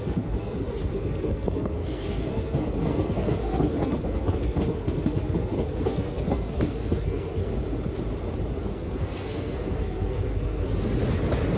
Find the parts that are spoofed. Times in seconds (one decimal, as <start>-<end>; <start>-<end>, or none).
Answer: 0.0-7.5; 8.6-10.7